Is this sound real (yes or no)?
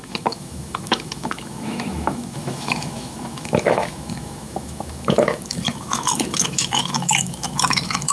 no